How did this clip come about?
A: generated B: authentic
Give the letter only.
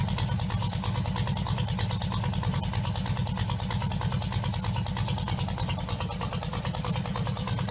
B